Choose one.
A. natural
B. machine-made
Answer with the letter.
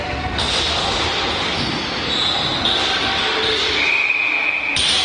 A